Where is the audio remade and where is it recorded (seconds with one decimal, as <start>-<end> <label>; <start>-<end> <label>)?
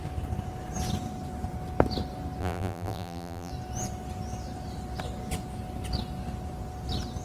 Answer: 0.0-2.4 recorded; 2.4-3.5 remade; 3.5-7.2 recorded